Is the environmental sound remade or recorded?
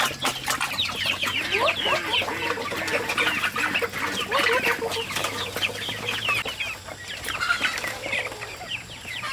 recorded